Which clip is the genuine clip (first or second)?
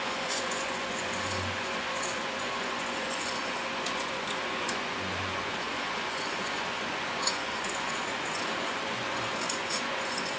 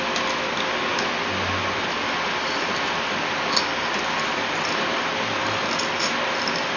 second